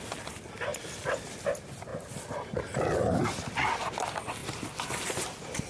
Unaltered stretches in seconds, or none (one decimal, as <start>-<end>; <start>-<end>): 0.0-5.7